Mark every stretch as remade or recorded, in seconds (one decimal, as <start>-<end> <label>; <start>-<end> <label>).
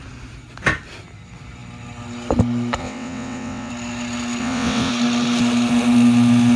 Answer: 0.0-2.8 recorded; 2.8-3.7 remade; 3.7-4.4 recorded; 4.4-4.9 remade; 4.9-6.6 recorded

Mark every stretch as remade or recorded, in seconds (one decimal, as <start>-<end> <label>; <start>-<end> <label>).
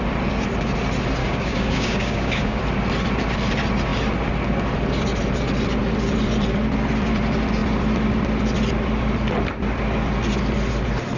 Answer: 0.0-1.2 recorded; 1.2-2.6 remade; 2.6-11.2 recorded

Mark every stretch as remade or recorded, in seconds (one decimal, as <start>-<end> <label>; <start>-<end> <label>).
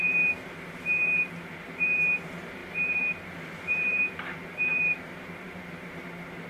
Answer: 0.0-6.5 remade